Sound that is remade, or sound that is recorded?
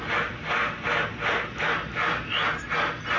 recorded